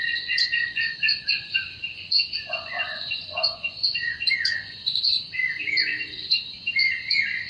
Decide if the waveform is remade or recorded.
remade